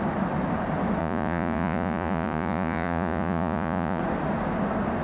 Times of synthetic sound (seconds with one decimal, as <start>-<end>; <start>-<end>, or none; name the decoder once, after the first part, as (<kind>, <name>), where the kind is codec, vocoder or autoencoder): 1.0-4.0 (vocoder, Vocos)